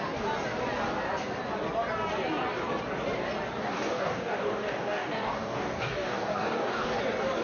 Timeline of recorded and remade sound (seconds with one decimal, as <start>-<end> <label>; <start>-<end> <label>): 0.0-3.6 recorded; 3.6-7.0 remade; 7.0-7.4 recorded